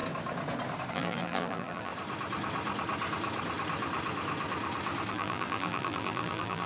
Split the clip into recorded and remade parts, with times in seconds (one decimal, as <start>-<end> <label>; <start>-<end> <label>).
0.0-0.9 recorded; 0.9-1.9 remade; 1.9-5.1 recorded; 5.1-6.7 remade